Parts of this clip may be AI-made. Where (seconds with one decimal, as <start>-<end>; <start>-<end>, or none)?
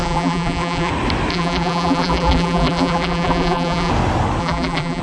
0.0-0.9; 1.3-3.9; 4.4-5.0